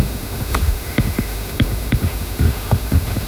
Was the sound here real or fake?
fake